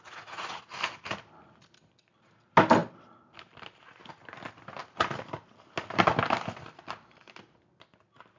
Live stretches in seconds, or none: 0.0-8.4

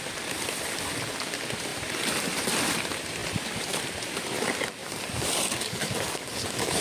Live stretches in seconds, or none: 0.0-4.8

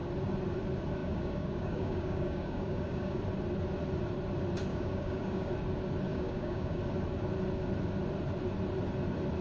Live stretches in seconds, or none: 0.0-1.0; 3.2-4.7; 5.5-6.1; 6.8-9.4

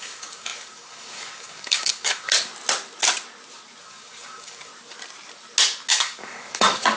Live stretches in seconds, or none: 2.5-3.8; 4.7-5.9